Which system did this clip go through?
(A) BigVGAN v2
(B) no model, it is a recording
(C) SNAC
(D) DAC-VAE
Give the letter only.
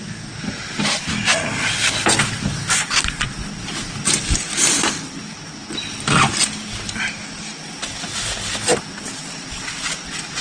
B